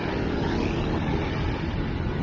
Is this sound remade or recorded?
recorded